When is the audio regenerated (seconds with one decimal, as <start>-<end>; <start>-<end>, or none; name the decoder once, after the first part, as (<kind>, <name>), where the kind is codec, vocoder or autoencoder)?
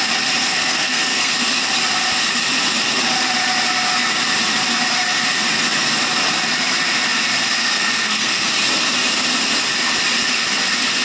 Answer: 0.4-1.3 (codec, SNAC); 7.6-8.5